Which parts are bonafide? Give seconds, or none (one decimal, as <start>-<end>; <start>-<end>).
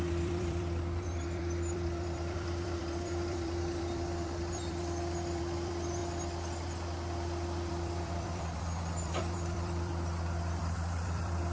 6.0-7.7; 9.9-10.6